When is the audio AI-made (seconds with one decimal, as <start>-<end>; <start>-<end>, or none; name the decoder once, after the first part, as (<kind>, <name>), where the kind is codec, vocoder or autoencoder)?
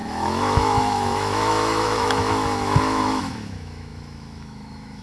0.0-5.0 (autoencoder, DAC-VAE)